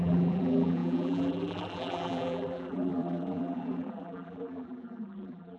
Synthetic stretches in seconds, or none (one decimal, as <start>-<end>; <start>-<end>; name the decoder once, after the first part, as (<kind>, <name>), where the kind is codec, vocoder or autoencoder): 0.0-5.6 (vocoder, BigVGAN v2)